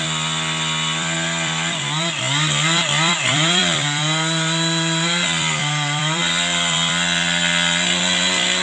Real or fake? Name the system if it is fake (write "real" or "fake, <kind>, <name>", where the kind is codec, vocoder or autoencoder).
fake, vocoder, BigVGAN v2